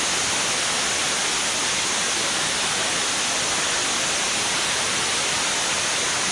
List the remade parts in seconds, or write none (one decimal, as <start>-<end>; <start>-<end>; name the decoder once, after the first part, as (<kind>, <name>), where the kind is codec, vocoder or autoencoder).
none